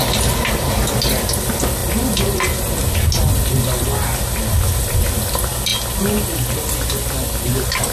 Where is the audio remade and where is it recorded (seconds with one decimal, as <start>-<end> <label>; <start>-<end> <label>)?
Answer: 0.0-7.9 recorded